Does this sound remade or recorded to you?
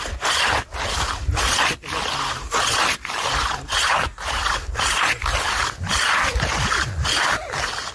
recorded